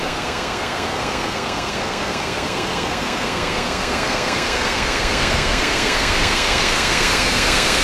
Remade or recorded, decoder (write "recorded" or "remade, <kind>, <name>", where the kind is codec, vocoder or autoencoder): remade, codec, SNAC